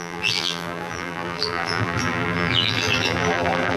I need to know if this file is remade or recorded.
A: remade